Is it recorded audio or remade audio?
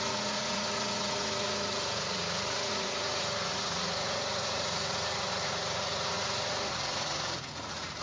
remade